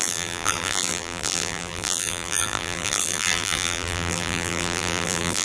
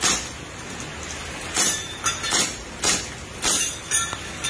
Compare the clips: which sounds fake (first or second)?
first